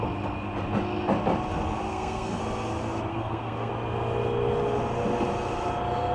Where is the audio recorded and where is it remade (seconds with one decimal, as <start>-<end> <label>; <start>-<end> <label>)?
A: 0.0-1.9 recorded; 1.9-2.4 remade; 2.4-3.1 recorded; 3.1-3.7 remade; 3.7-6.1 recorded